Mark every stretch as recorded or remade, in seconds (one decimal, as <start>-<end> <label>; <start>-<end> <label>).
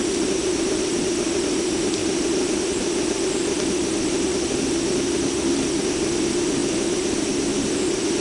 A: 0.0-8.2 recorded